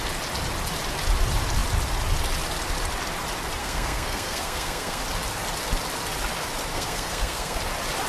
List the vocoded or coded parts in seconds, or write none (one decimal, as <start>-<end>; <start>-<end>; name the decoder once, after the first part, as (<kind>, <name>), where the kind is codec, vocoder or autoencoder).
3.6-5.0 (codec, SNAC); 6.7-7.6

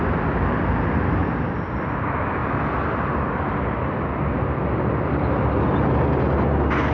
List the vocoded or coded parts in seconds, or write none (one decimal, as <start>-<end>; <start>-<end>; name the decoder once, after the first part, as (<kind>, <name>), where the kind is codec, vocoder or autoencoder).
none

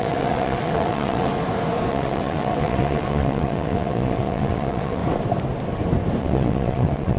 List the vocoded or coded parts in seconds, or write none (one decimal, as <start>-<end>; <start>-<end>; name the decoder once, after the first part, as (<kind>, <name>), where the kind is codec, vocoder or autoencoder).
0.0-1.3 (vocoder, WaveNeXt); 1.9-5.0; 6.2-7.2

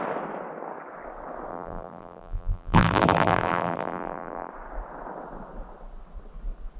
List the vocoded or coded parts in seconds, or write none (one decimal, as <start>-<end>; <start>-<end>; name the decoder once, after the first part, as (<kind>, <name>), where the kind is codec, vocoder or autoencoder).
1.5-4.5 (vocoder, BigVGAN v2)

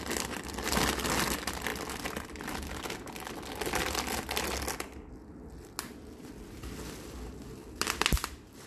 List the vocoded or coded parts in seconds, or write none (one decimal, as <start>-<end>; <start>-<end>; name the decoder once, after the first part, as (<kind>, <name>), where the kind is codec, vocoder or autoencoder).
none

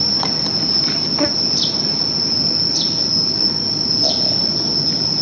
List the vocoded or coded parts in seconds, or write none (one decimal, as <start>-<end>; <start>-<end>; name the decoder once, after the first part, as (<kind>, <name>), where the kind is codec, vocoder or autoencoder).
none

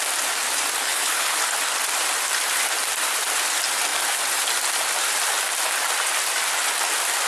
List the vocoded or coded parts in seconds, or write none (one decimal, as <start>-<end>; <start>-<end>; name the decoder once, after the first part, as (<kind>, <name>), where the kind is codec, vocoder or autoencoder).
0.8-1.4 (codec, HILCodec)

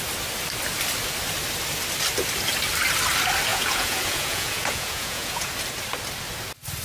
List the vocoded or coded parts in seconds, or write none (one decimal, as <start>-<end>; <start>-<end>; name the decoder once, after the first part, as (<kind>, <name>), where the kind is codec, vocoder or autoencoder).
3.5-5.5 (vocoder, Vocos)